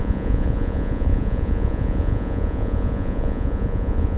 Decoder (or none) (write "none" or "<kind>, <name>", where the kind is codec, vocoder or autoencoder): vocoder, Vocos